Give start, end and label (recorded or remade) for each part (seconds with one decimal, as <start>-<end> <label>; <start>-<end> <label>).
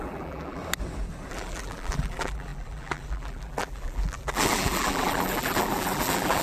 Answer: 0.0-0.6 remade; 0.6-1.3 recorded; 1.3-6.4 remade